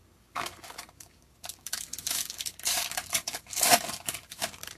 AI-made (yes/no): yes